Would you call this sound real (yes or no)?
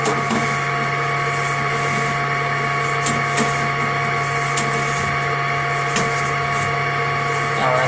yes